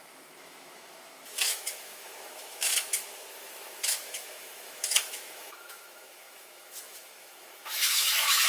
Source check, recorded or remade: remade